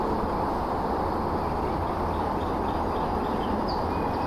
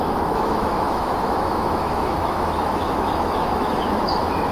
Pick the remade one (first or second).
second